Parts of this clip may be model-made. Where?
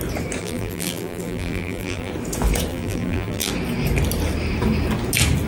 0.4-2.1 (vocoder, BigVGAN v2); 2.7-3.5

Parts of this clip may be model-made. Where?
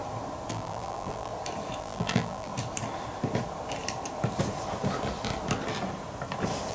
0.5-1.3 (vocoder, BigVGAN v2); 1.8-2.5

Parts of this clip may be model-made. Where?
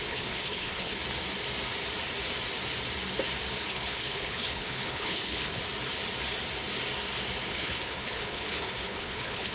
0.0-1.0 (codec, HILCodec); 3.7-5.6; 7.5-9.5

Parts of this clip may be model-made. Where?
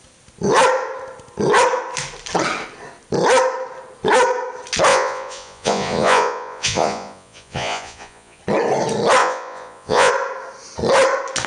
4.9-8.4 (vocoder, Vocos); 9.2-10.1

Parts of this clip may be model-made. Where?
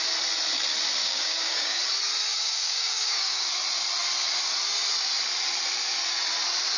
1.0-1.8 (codec, DAC); 2.3-3.5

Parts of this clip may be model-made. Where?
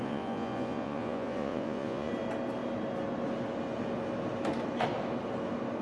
0.0-2.1 (vocoder, Vocos)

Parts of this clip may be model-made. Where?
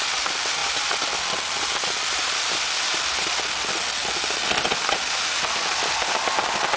none